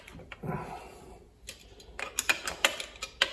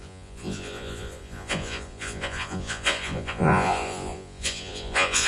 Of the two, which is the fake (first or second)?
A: second